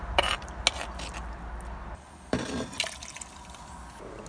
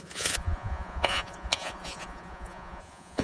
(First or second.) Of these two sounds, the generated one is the second